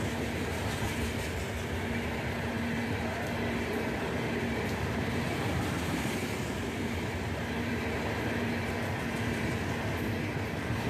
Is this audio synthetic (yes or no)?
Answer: no